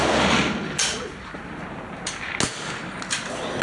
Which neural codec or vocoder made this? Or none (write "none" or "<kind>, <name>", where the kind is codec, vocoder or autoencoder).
none